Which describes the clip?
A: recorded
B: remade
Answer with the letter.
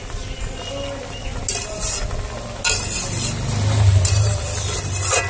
A